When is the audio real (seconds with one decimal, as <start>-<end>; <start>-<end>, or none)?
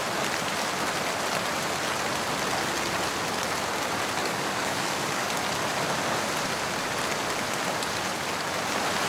0.0-4.2; 5.3-9.1